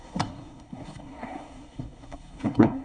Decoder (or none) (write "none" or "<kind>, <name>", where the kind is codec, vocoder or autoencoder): codec, SNAC